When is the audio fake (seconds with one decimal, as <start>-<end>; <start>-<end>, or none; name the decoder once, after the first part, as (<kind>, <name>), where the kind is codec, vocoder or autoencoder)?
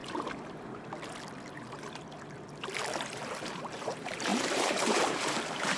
3.5-5.8 (vocoder, BigVGAN v2)